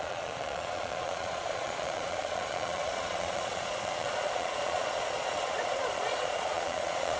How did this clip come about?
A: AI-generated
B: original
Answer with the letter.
A